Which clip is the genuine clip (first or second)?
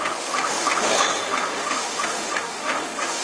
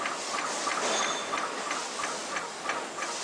second